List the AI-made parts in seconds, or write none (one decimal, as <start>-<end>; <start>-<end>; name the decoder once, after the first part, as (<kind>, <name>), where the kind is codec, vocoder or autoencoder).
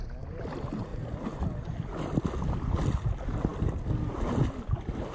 none